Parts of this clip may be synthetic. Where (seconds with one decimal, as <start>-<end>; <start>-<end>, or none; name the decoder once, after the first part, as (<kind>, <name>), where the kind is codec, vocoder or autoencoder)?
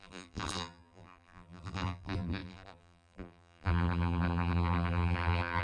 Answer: 0.0-5.6 (vocoder, BigVGAN v2)